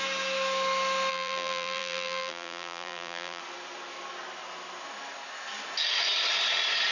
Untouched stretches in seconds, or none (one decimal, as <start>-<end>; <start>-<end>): 0.0-1.1; 3.4-6.9